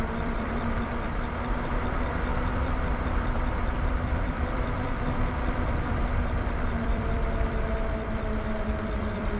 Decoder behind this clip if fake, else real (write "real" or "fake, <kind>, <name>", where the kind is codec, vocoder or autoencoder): fake, vocoder, BigVGAN v2